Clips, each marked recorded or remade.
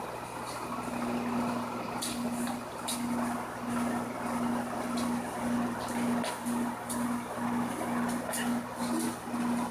recorded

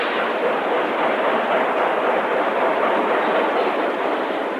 recorded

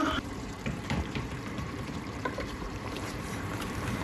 remade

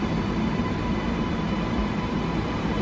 remade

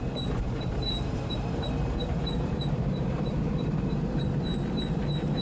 remade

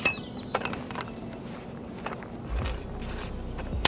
remade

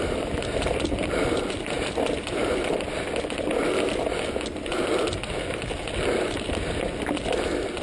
recorded